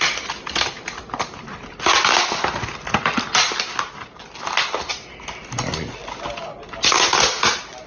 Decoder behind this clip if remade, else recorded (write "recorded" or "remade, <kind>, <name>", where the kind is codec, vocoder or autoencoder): recorded